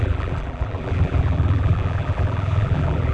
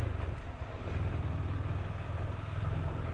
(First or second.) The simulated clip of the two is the first